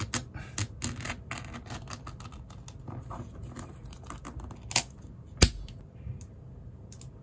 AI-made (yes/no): no